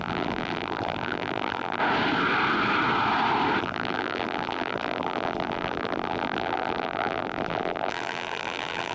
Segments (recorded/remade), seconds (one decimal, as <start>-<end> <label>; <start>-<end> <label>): 0.0-1.8 remade; 1.8-3.6 recorded; 3.6-8.9 remade